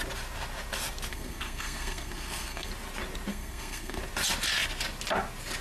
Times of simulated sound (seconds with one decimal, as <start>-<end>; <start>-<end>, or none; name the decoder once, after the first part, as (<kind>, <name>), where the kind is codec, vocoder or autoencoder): 1.1-2.7 (codec, SNAC); 3.3-4.0